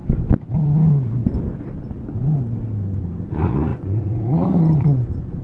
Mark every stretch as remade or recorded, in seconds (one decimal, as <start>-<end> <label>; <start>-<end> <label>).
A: 0.0-3.2 recorded; 3.2-5.4 remade